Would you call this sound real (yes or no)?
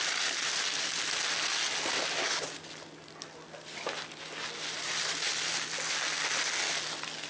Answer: yes